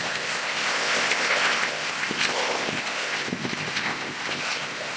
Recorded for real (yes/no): no